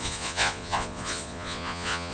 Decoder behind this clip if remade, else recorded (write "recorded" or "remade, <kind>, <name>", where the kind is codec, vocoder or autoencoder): remade, vocoder, Vocos